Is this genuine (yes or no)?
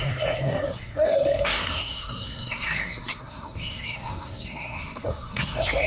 no